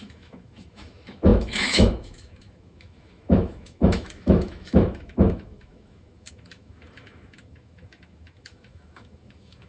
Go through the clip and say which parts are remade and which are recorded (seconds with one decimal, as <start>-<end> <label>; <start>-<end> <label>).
0.0-9.7 remade